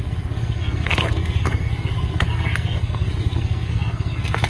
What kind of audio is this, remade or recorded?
remade